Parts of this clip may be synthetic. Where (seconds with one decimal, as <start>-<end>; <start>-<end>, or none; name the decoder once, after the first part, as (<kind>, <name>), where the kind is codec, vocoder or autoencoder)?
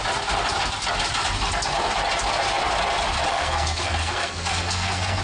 3.3-5.2 (codec, SNAC)